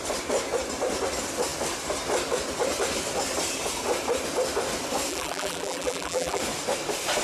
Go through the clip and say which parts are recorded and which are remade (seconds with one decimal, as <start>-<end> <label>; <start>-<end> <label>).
0.0-5.1 recorded; 5.1-6.4 remade; 6.4-7.2 recorded